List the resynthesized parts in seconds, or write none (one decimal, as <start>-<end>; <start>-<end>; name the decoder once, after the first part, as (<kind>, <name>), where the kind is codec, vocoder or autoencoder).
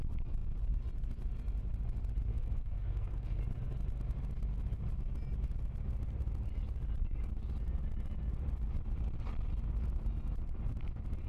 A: 2.3-3.4 (codec, SNAC)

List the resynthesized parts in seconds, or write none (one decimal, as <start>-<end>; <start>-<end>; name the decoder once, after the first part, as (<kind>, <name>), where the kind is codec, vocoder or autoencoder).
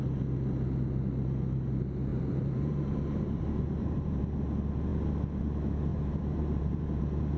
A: 2.1-4.2 (vocoder, BigVGAN v2); 5.9-7.0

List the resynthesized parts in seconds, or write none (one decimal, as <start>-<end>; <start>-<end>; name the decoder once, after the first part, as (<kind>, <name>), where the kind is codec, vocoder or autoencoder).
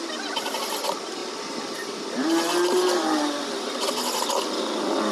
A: none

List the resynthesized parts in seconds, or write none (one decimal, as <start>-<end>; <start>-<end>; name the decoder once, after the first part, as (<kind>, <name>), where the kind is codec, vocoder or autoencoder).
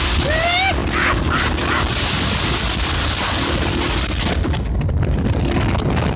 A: none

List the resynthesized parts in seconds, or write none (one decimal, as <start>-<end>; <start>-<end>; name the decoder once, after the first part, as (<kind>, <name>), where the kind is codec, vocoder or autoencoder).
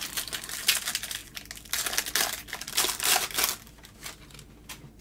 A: none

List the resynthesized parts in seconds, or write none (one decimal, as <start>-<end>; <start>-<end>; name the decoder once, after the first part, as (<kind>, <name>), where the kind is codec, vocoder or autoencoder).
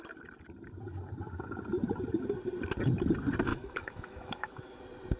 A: 3.5-4.8 (autoencoder, DAC-VAE)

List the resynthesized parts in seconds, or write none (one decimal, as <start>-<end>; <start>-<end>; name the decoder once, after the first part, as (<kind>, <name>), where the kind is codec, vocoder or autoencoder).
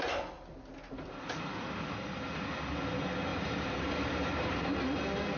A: 3.3-4.7 (vocoder, BigVGAN v2)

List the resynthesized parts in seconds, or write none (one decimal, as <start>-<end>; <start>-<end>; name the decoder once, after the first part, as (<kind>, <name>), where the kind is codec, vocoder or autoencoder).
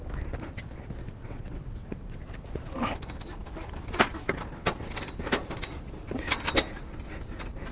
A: 1.0-2.2 (vocoder, WaveNeXt)